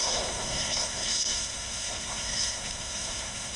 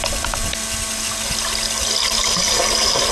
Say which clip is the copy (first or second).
first